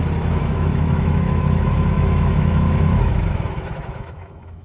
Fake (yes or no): yes